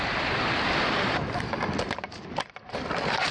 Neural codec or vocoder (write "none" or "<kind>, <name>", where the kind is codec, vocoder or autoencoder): none